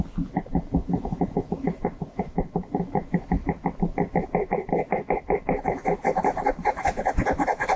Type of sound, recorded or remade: recorded